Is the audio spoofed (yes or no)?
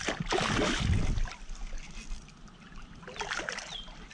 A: no